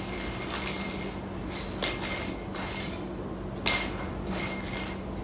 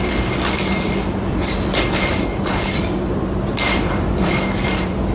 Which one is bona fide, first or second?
first